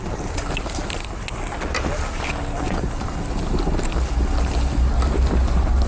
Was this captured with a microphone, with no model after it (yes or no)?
yes